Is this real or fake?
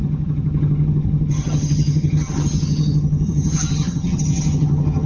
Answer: fake